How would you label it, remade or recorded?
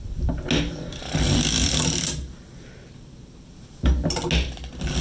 recorded